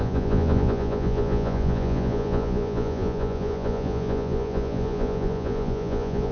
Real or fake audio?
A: fake